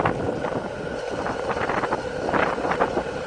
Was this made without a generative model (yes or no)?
yes